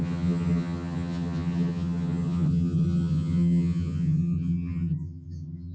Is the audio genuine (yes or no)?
no